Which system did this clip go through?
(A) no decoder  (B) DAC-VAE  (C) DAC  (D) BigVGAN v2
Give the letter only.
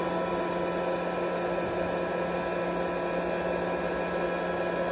A